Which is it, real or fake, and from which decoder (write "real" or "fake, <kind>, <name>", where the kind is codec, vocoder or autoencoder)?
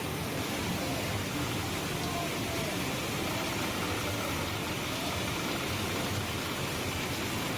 real